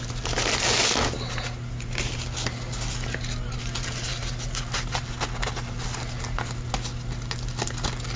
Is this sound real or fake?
real